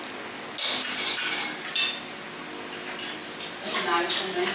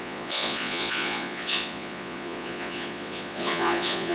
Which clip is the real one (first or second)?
first